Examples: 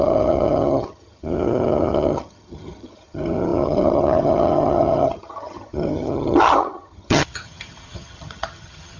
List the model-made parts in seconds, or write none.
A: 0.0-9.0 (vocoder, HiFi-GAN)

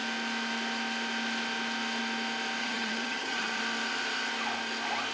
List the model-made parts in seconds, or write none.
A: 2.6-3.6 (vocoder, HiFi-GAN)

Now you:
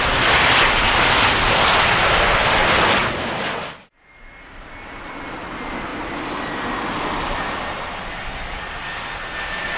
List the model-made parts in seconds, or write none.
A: none